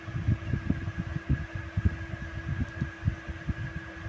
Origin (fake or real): real